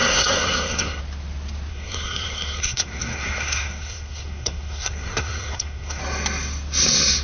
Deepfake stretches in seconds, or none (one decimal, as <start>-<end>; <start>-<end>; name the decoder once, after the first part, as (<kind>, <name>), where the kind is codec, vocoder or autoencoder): 0.0-1.0 (codec, SNAC); 1.7-6.0

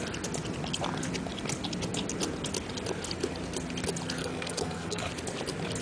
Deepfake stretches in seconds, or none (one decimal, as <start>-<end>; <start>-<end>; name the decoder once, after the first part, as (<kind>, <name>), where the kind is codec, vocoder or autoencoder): 4.2-5.1 (codec, SNAC)

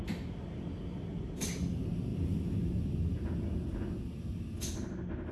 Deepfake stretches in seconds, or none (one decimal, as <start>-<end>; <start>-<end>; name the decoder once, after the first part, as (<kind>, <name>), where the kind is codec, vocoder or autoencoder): none

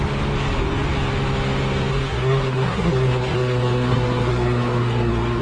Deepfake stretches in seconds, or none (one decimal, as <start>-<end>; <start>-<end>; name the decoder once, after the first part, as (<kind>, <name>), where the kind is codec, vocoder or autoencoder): 1.9-5.4 (codec, SNAC)

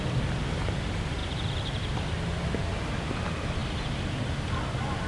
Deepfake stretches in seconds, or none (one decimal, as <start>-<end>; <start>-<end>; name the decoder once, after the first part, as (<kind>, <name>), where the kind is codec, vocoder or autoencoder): none